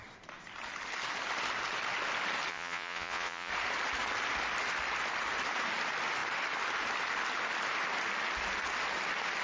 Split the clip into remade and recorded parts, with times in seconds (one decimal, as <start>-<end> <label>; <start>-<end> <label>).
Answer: 0.0-2.5 recorded; 2.5-3.5 remade; 3.5-9.4 recorded